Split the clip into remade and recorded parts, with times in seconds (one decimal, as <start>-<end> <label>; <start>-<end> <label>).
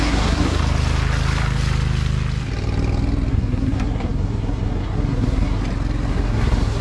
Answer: 0.0-0.6 remade; 0.6-3.3 recorded; 3.3-5.6 remade; 5.6-6.1 recorded; 6.1-6.8 remade